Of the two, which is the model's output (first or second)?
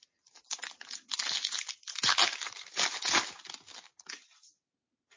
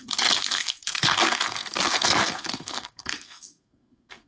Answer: second